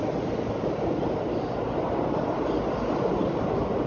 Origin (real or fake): real